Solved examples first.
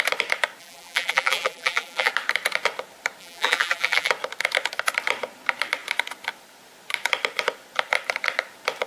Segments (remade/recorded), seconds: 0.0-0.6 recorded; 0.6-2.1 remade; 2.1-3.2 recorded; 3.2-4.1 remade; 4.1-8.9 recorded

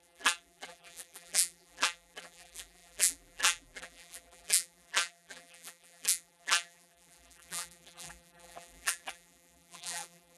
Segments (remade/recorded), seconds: 0.0-10.4 remade

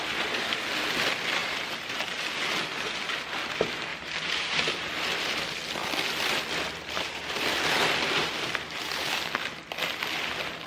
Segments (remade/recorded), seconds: 0.0-1.4 recorded; 1.4-2.2 remade; 2.2-3.9 recorded; 3.9-4.9 remade; 4.9-10.7 recorded

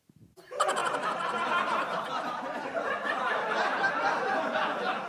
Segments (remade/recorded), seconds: 0.0-0.8 recorded; 0.8-3.9 remade; 3.9-5.1 recorded

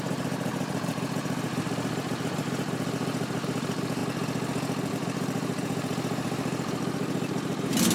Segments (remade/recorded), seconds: 0.0-4.0 remade; 4.0-4.9 recorded; 4.9-7.9 remade

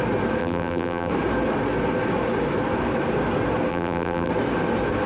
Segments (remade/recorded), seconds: 0.0-0.4 recorded; 0.4-1.1 remade; 1.1-3.7 recorded; 3.7-4.3 remade; 4.3-5.1 recorded

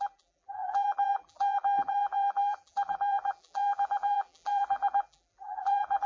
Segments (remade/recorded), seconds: 0.0-6.1 remade